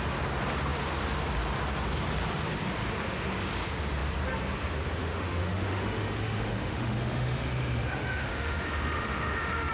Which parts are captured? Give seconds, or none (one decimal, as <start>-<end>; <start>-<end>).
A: 0.0-5.0